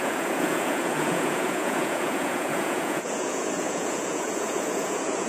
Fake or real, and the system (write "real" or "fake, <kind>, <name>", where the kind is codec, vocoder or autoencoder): fake, vocoder, Vocos